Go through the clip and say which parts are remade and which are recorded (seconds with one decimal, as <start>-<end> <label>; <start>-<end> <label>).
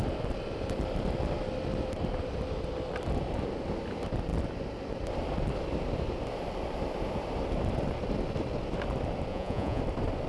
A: 0.0-9.3 recorded; 9.3-9.8 remade; 9.8-10.3 recorded